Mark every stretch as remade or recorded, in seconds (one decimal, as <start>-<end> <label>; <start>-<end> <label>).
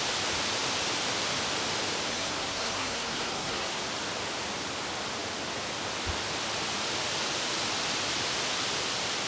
0.0-2.1 recorded; 2.1-3.8 remade; 3.8-9.3 recorded